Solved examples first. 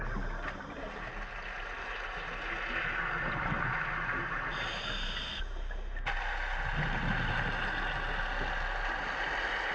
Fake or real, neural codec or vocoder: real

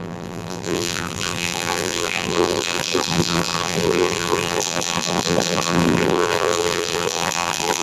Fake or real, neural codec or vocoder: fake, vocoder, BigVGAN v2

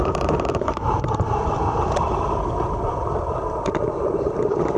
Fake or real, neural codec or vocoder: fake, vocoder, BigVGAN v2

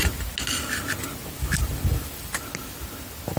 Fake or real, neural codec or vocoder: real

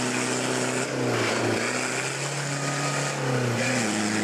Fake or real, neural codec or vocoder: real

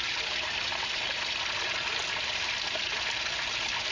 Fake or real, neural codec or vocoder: real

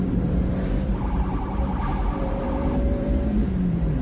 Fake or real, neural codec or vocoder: fake, vocoder, BigVGAN v2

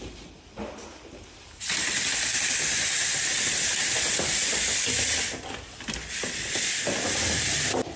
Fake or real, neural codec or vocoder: fake, vocoder, BigVGAN v2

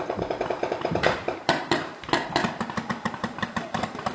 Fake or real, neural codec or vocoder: fake, vocoder, BigVGAN v2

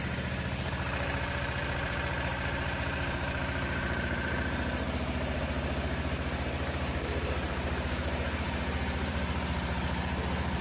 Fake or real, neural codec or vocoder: fake, vocoder, BigVGAN v2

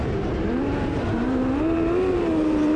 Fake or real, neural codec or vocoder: fake, vocoder, BigVGAN v2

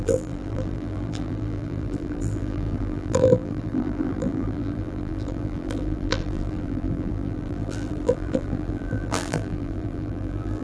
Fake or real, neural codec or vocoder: fake, vocoder, BigVGAN v2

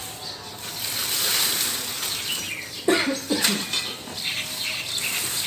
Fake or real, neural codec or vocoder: fake, vocoder, BigVGAN v2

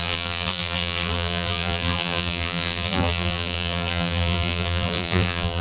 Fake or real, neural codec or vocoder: fake, vocoder, BigVGAN v2